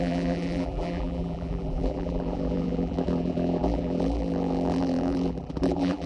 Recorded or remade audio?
remade